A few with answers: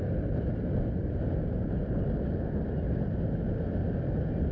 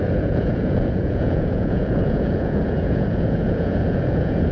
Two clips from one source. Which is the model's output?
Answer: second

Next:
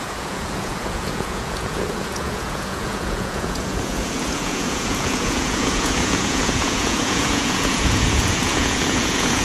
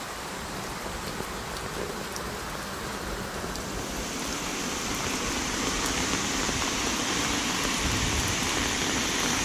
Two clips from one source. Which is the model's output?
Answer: first